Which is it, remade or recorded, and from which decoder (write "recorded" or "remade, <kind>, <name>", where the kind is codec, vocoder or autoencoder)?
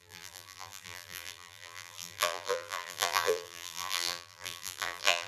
remade, vocoder, BigVGAN v2